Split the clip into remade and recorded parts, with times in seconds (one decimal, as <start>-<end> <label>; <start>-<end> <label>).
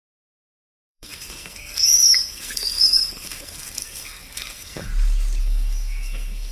0.0-4.9 remade; 4.9-5.4 recorded; 5.4-6.5 remade